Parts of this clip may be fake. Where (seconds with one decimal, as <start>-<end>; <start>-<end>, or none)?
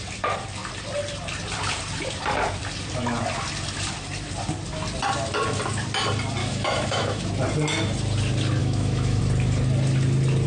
6.4-7.2; 8.6-9.2